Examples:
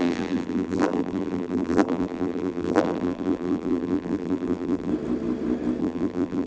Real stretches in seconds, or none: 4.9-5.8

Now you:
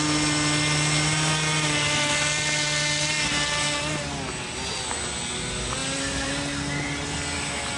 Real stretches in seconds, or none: 0.0-5.8; 6.3-7.8